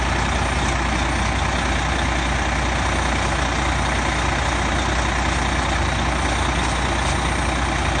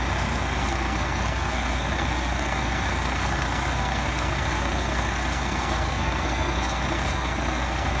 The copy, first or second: second